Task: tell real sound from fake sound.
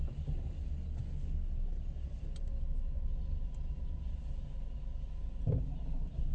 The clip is real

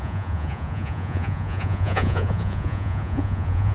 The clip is fake